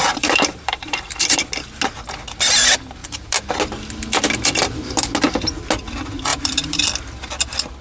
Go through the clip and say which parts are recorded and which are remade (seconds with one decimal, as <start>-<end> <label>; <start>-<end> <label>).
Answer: 0.0-1.1 remade; 1.1-3.0 recorded; 3.0-3.5 remade; 3.5-6.3 recorded; 6.3-6.9 remade; 6.9-7.8 recorded